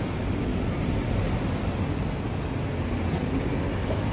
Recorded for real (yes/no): yes